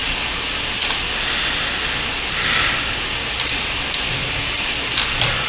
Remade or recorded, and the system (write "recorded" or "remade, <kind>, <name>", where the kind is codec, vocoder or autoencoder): recorded